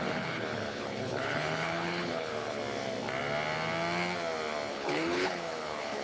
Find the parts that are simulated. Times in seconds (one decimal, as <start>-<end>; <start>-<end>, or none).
0.0-2.6; 4.7-6.0